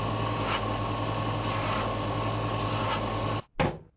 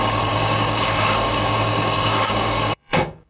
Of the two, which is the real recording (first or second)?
first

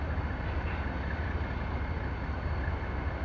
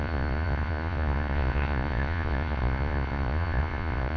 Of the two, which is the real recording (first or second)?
first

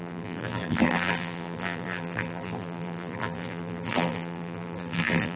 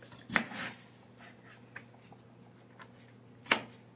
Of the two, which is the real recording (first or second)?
second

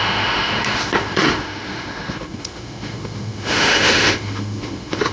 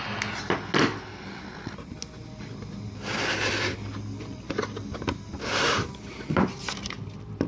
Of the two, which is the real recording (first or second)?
second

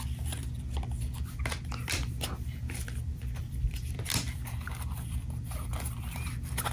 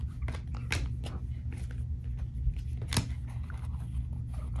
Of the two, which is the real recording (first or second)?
second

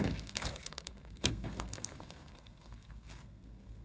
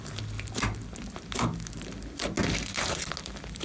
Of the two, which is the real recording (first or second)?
second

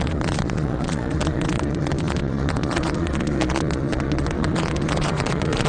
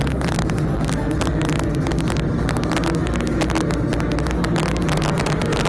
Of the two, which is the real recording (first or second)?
second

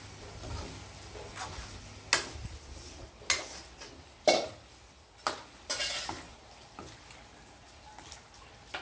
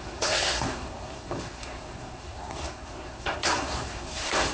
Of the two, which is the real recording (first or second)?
first